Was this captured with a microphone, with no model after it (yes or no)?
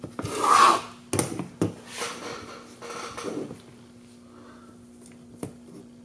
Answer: yes